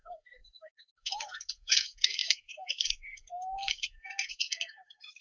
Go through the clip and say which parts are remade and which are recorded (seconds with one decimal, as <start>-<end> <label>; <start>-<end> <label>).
0.0-5.2 remade